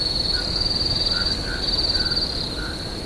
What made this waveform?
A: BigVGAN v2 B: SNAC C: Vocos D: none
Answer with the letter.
D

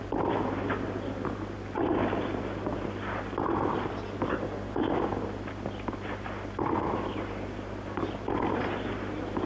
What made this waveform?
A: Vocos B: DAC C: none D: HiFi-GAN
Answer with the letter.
C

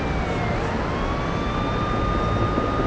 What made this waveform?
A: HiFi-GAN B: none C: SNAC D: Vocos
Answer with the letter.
B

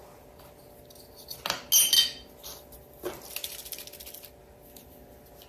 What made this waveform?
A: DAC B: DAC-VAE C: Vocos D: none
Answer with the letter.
D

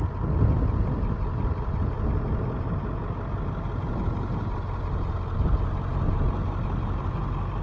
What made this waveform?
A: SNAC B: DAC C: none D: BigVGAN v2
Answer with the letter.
C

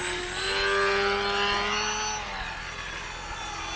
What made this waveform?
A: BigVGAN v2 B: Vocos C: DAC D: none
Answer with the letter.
D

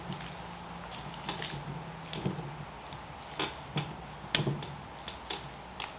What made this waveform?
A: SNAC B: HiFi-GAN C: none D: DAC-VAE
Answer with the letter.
C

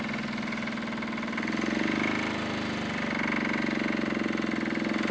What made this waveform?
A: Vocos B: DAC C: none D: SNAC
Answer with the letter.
C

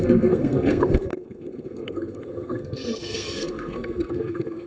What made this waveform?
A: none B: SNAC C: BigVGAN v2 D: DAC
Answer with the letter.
B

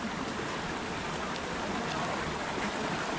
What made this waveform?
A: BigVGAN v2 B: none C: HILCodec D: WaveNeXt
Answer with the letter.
B